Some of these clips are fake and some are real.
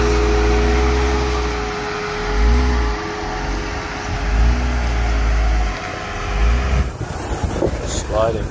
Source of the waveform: real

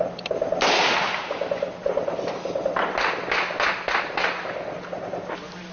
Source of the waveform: real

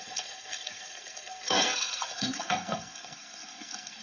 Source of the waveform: fake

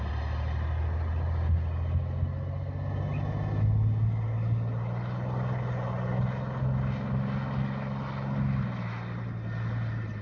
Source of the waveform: real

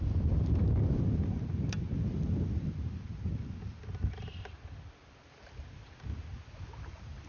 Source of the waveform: real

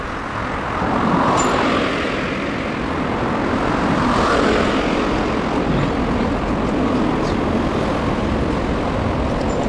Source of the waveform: real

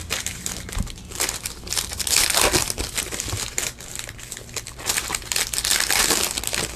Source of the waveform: real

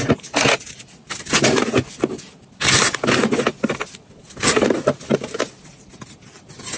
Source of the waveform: real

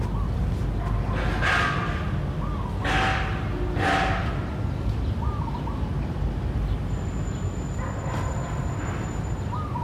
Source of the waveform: real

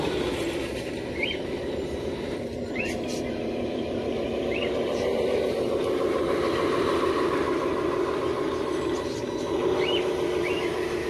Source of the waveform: fake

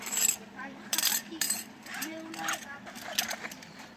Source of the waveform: fake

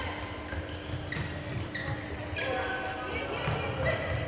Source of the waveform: real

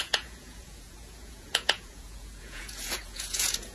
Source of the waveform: fake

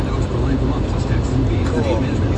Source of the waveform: real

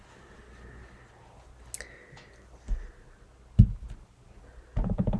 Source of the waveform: real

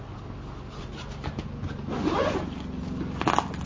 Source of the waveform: real